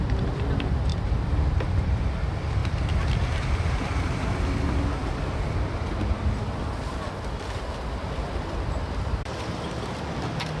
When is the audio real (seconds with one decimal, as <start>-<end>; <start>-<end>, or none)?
2.6-3.4

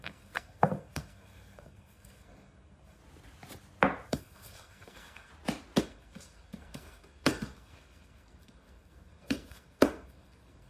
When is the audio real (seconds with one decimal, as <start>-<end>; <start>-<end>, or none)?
3.0-4.1; 5.3-5.8

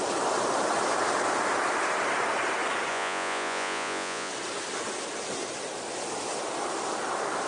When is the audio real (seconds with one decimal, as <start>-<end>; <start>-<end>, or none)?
0.0-2.9; 4.3-7.5

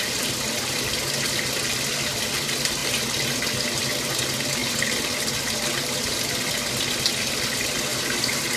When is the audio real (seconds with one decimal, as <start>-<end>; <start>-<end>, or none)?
0.0-7.9

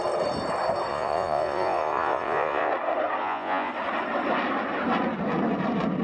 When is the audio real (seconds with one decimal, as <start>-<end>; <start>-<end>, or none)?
0.0-0.9; 2.7-3.2; 3.7-6.0

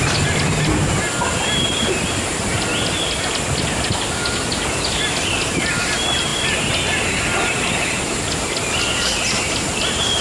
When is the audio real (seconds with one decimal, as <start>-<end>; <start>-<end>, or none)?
0.0-2.5; 3.3-10.2

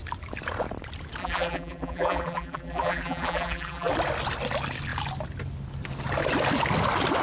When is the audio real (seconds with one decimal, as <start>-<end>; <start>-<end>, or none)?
0.0-1.2; 3.9-7.2

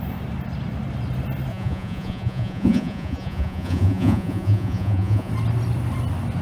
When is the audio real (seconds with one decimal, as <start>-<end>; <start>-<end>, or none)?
0.0-1.5; 5.3-6.4